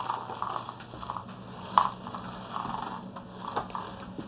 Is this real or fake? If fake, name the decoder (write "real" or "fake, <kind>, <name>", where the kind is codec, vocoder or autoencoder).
real